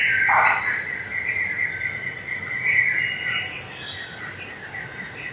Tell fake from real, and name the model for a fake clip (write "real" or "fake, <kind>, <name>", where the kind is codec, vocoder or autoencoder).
real